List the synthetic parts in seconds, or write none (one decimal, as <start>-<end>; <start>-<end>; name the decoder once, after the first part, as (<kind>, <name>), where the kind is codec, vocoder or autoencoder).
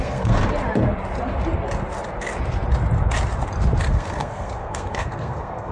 0.0-0.4 (codec, SNAC); 3.8-5.7